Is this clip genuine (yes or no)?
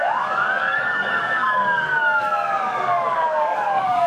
no